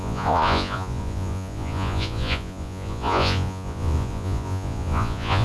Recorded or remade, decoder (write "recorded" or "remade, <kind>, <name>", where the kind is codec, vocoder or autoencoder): remade, vocoder, Vocos